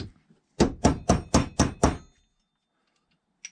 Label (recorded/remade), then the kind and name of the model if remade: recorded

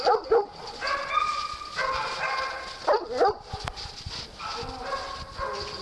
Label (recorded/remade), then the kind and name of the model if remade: recorded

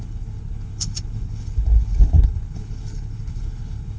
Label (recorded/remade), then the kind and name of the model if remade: remade, codec, HILCodec